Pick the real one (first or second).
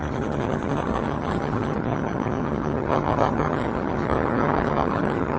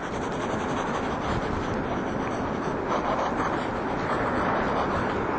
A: second